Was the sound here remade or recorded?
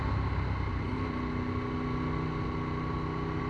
recorded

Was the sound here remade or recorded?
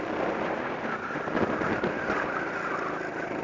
recorded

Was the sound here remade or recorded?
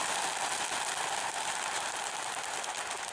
recorded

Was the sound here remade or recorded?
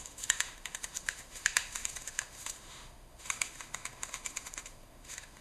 remade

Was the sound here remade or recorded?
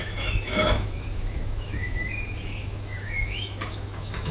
remade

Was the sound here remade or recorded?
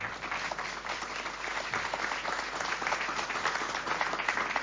recorded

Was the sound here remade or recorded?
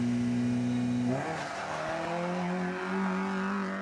recorded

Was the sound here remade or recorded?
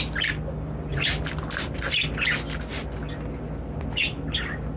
recorded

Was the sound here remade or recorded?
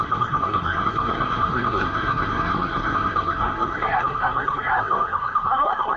remade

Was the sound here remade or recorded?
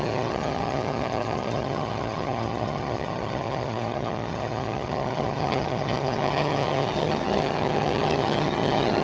remade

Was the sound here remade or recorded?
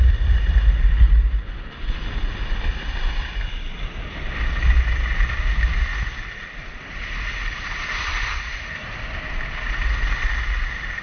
recorded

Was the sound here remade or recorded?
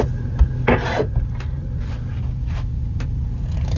recorded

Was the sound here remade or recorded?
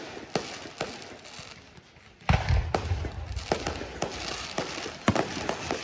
recorded